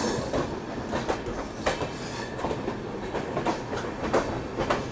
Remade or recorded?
recorded